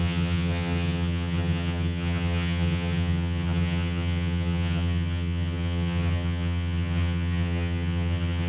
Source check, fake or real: fake